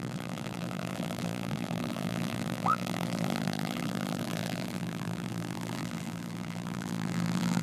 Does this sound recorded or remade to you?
remade